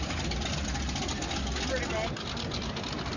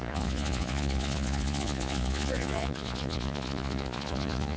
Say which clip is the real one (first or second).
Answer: first